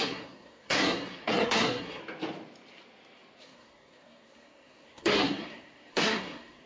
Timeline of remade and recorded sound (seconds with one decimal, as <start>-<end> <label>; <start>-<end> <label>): 0.0-2.0 remade; 2.0-3.4 recorded; 3.4-6.7 remade